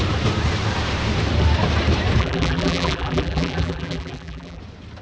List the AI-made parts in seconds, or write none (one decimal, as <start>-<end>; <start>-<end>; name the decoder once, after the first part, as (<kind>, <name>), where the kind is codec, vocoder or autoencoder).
2.2-4.6 (vocoder, BigVGAN v2)